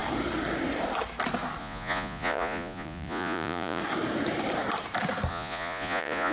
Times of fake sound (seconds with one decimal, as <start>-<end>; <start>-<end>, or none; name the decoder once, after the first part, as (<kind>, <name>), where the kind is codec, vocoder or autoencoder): 1.6-3.8 (vocoder, Vocos); 5.3-6.3